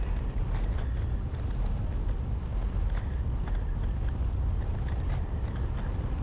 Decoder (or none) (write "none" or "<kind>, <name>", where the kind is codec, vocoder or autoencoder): none